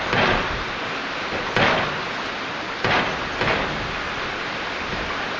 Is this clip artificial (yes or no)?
no